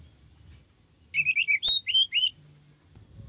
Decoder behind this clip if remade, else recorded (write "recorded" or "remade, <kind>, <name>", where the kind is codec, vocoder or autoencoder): recorded